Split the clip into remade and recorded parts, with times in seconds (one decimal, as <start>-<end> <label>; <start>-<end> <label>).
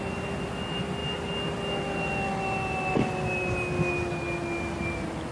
0.0-5.3 recorded